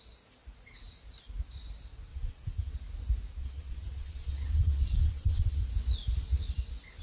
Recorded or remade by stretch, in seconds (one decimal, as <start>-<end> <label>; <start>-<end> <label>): 0.0-2.1 recorded; 2.1-2.7 remade; 2.7-3.4 recorded; 3.4-5.7 remade; 5.7-7.0 recorded